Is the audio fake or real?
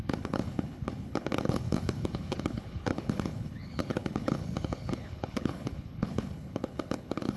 fake